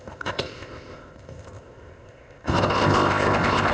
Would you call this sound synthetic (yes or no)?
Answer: yes